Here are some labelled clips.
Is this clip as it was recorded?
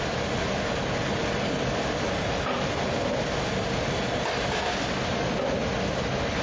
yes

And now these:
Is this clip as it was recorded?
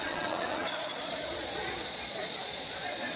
no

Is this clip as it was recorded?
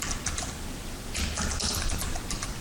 yes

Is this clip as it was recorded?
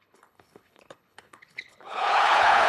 no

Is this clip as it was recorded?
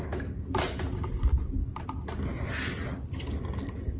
yes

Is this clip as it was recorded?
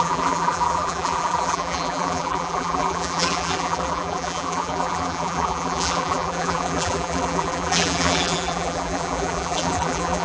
no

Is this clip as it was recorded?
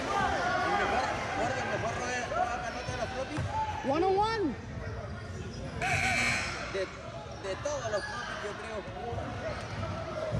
yes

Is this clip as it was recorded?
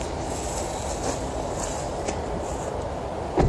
yes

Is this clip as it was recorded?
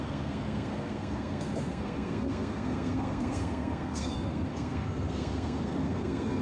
no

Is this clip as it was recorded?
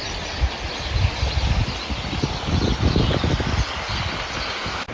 yes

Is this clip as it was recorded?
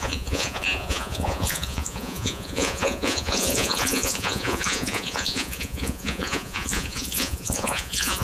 no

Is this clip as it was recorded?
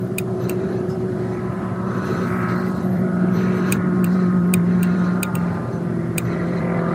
no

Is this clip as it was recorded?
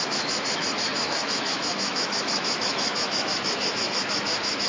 no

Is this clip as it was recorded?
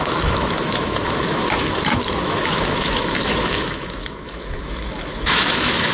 no